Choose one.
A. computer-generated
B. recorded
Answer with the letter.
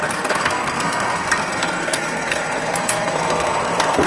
A